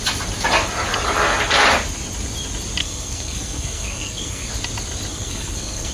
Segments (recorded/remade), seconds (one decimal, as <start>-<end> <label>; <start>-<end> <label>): 0.0-2.8 recorded; 2.8-4.5 remade; 4.5-5.1 recorded; 5.1-5.9 remade